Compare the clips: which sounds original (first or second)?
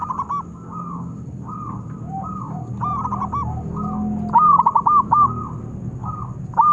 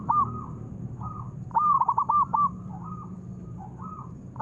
first